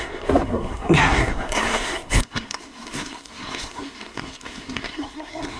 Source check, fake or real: fake